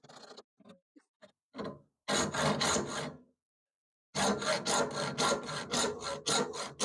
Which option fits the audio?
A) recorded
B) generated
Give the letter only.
A